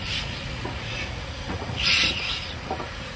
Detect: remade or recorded remade